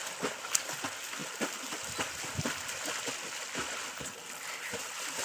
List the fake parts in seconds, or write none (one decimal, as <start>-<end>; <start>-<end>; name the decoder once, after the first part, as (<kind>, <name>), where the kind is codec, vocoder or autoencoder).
none